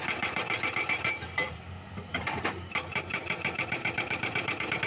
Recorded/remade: remade